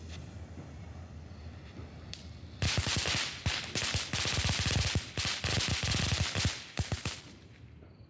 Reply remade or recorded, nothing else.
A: recorded